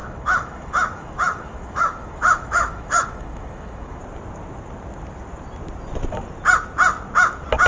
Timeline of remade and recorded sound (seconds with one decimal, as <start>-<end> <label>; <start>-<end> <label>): 0.0-4.0 remade; 4.0-7.7 recorded